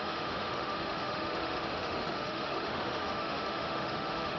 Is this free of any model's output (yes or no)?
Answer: no